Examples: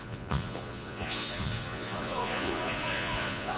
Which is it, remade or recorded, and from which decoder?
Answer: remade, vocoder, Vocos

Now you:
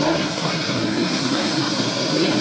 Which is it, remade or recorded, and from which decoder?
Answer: remade, codec, SNAC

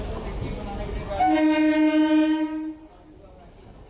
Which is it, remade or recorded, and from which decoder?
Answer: recorded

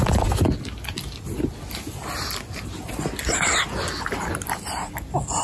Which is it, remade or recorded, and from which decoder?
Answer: recorded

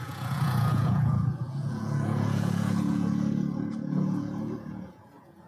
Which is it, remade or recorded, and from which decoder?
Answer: remade, vocoder, Vocos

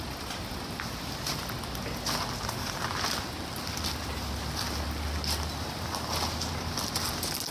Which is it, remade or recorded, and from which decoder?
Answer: recorded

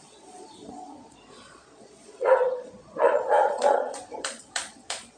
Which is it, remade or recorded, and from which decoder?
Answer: remade, vocoder, Vocos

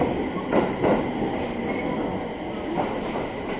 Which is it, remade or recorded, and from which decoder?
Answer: recorded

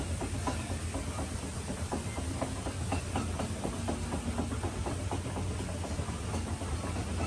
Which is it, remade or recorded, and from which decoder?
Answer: recorded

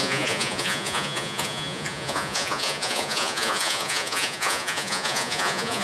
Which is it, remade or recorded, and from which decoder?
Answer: remade, vocoder, Vocos